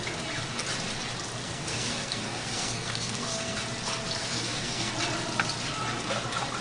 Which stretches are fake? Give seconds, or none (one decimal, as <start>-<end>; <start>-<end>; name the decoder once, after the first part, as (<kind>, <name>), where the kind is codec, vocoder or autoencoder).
1.4-3.6 (codec, SNAC); 4.2-4.9